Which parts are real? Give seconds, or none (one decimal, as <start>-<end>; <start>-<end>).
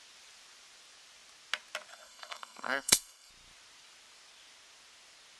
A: 0.0-1.9; 3.3-5.4